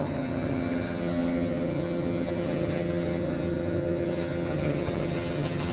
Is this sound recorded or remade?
remade